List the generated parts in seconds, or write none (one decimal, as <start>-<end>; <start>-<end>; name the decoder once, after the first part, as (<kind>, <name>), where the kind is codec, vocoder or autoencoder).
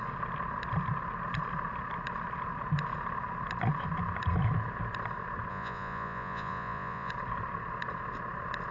5.5-7.1 (vocoder, Vocos)